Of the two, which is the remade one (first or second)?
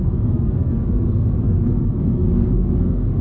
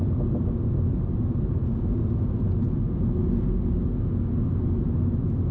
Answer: first